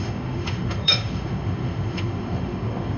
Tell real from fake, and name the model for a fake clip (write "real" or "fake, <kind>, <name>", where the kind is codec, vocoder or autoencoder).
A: fake, autoencoder, DAC-VAE